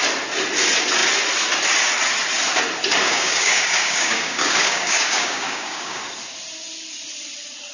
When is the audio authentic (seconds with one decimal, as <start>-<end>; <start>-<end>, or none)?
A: 0.0-3.0; 6.0-7.7